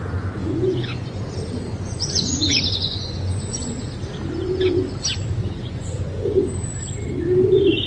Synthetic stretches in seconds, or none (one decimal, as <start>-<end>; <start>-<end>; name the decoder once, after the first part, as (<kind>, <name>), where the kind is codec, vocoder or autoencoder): 0.4-1.2 (vocoder, Vocos); 1.7-3.9; 5.4-6.4